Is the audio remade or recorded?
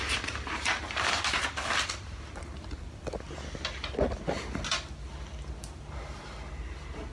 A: recorded